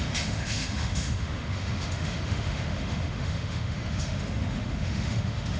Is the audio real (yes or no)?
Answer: no